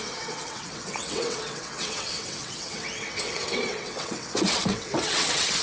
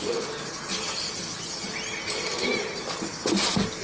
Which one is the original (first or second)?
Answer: second